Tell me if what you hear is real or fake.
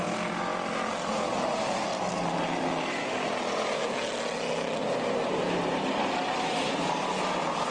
real